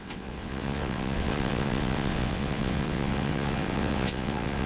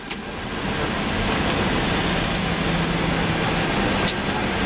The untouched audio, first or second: second